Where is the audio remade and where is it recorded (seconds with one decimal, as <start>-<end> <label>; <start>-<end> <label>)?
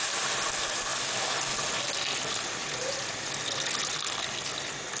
0.0-2.6 recorded; 2.6-4.0 remade; 4.0-5.0 recorded